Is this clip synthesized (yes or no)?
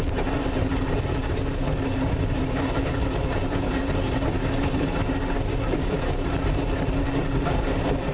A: yes